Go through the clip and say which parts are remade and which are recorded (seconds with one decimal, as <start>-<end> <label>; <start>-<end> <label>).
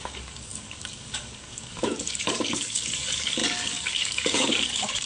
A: 0.0-5.1 remade